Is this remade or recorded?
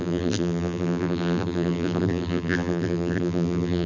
remade